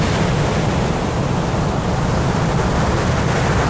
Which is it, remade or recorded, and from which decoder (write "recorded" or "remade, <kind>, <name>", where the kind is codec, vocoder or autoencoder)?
recorded